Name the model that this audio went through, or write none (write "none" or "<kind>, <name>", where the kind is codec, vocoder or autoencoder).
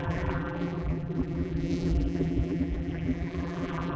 vocoder, BigVGAN v2